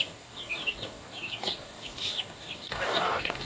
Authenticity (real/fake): fake